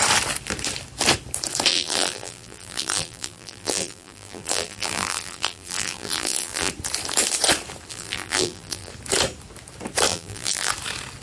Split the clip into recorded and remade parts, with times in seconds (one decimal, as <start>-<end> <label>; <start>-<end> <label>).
0.0-1.7 recorded; 1.7-6.7 remade; 6.7-7.9 recorded; 7.9-8.9 remade; 8.9-10.1 recorded; 10.1-10.7 remade; 10.7-11.2 recorded

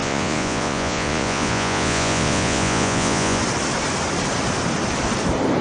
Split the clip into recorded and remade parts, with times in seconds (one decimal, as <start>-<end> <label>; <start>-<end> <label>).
0.0-3.4 remade; 3.4-5.6 recorded